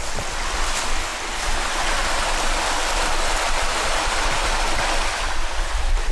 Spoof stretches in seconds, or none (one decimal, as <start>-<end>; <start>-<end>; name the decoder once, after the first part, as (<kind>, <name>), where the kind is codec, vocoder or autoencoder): 1.1-4.8 (vocoder, BigVGAN v2)